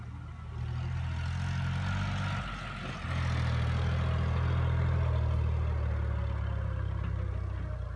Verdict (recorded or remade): recorded